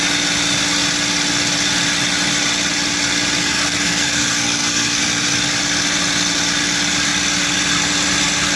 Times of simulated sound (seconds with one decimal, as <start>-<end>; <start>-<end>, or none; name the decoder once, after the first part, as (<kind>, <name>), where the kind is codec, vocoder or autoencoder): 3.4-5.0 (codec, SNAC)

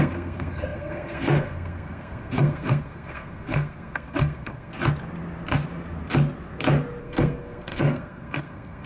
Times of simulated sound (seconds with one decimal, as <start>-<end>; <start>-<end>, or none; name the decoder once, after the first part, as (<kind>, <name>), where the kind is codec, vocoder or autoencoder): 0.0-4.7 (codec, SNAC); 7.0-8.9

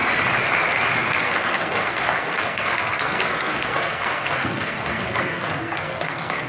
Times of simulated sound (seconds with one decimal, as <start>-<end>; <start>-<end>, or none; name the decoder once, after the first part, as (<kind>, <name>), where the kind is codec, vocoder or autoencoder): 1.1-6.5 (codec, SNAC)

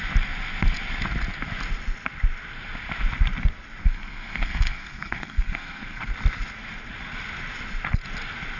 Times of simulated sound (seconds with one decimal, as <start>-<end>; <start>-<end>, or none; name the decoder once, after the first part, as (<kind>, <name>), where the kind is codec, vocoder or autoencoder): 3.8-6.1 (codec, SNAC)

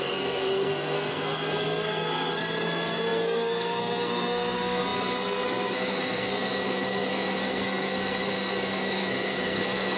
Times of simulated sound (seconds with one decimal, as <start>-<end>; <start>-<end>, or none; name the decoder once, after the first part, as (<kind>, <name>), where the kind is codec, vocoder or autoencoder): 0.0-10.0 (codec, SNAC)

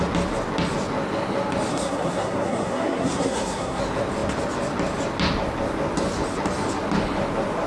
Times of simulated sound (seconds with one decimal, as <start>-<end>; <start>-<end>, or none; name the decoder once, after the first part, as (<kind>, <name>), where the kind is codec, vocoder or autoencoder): 1.7-3.8 (codec, SNAC)

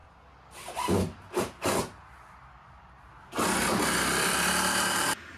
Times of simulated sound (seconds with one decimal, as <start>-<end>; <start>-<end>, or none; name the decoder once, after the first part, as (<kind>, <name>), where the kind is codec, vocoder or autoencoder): none

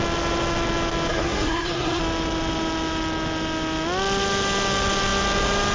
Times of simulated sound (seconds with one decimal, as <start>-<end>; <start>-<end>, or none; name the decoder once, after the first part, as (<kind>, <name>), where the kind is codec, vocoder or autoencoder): 1.1-2.0 (codec, SNAC)